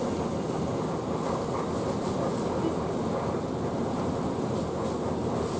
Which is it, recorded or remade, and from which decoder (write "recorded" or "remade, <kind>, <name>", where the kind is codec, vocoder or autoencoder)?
recorded